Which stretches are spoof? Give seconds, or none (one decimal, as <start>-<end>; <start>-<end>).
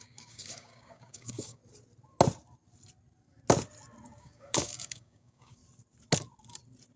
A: 0.0-1.6; 4.2-5.6